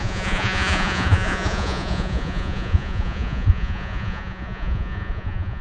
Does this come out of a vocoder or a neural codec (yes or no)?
yes